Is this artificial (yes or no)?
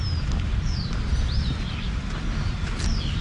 no